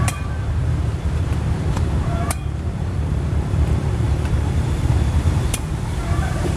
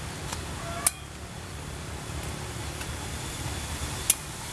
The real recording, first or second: second